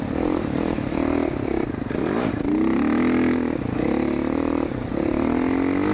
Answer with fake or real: real